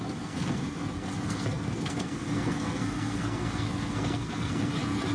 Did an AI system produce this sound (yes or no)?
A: yes